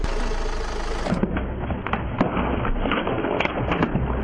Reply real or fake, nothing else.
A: real